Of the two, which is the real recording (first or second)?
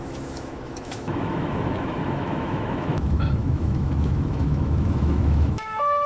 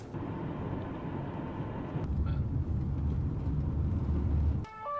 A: second